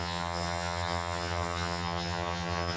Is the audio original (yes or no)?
no